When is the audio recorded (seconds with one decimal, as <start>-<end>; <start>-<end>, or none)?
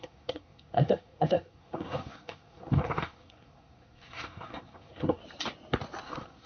5.2-6.0